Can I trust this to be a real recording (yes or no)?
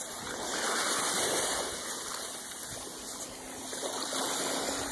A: yes